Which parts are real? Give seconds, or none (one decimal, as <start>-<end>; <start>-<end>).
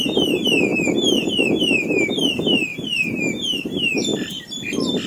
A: 0.0-0.7; 1.5-2.7; 3.2-4.1